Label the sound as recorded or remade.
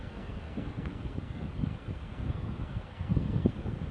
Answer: remade